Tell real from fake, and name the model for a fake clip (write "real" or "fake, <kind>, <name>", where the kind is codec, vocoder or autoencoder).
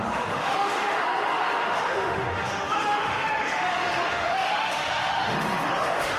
fake, autoencoder, DAC-VAE